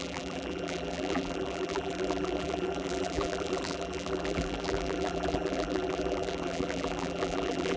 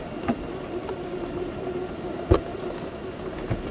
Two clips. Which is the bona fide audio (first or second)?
second